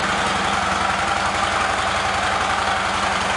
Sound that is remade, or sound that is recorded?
recorded